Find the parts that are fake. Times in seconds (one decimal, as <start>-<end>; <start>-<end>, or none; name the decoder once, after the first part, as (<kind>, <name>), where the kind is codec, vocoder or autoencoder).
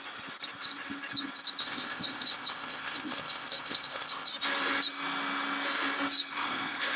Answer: 1.6-4.3 (codec, ZipCodec); 6.3-7.0